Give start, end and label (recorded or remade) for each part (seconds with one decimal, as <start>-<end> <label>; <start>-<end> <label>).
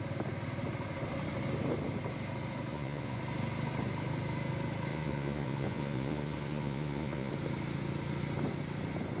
0.0-2.7 recorded; 2.7-3.2 remade; 3.2-4.9 recorded; 4.9-7.3 remade; 7.3-9.2 recorded